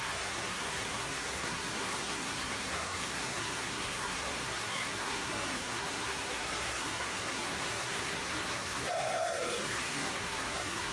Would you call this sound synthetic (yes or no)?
yes